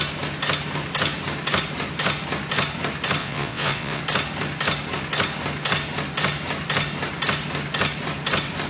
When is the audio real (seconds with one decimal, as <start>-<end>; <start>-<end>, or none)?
0.0-3.2; 4.0-8.7